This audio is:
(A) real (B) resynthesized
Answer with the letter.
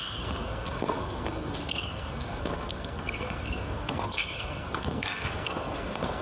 B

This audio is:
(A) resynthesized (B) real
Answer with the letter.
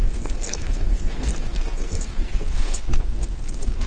A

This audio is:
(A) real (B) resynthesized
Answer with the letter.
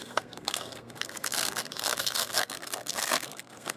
B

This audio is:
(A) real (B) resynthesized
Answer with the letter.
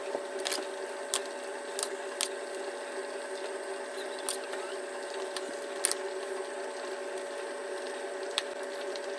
A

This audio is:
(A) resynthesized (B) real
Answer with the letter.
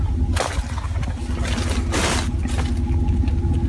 B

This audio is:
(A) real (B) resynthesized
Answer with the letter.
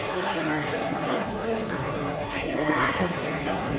B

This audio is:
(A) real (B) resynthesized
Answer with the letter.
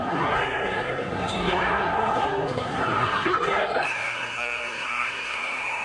B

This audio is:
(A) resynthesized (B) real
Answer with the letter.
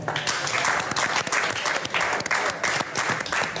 B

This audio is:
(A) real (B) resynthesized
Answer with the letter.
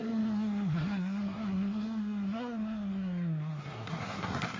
B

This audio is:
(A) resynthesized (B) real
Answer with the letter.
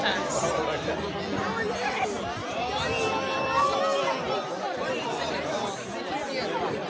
B